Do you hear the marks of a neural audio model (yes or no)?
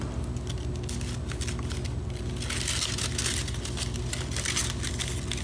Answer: no